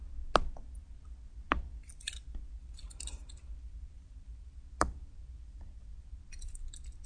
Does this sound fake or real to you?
real